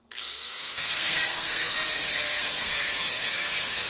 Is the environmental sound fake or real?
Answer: fake